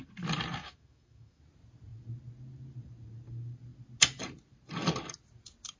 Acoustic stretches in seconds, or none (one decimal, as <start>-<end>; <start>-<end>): 0.0-0.6; 1.4-5.8